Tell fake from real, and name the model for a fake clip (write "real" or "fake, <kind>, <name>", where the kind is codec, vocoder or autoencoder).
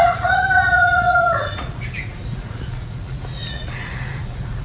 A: fake, vocoder, Vocos